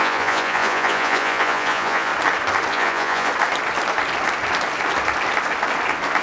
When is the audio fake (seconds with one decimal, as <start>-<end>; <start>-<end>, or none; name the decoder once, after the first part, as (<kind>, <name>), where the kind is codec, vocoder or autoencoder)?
0.0-2.1 (vocoder, Vocos); 2.7-3.3